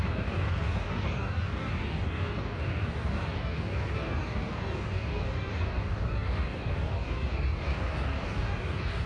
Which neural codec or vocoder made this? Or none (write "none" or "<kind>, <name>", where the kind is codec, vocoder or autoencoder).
codec, DAC